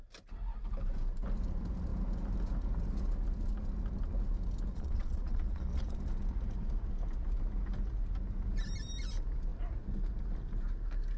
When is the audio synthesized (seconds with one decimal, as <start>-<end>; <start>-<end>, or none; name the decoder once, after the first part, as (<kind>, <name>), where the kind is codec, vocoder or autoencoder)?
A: 4.7-6.0 (vocoder, Vocos)